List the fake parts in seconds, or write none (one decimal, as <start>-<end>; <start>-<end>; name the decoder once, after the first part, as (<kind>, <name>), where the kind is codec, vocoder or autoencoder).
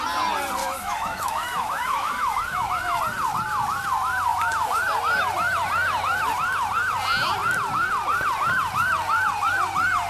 0.6-3.0 (autoencoder, DAC-VAE)